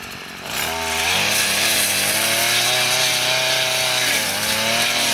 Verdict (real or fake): real